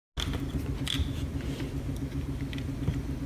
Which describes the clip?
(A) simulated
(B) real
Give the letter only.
B